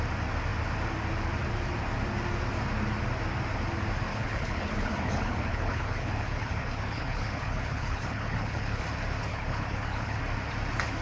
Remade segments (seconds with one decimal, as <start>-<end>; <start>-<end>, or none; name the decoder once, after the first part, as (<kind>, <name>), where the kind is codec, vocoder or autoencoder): 4.1-8.8 (codec, HILCodec); 9.3-10.2